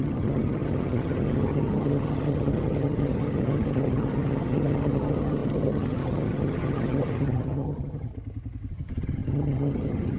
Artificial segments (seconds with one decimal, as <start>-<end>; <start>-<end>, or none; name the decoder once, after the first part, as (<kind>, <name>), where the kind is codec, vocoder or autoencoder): 0.0-8.1 (vocoder, HiFi-GAN); 8.7-10.2